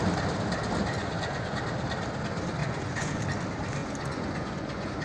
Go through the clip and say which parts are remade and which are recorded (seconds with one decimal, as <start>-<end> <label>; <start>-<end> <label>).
0.0-1.0 recorded; 1.0-1.6 remade; 1.6-2.6 recorded; 2.6-3.2 remade; 3.2-3.8 recorded; 3.8-5.0 remade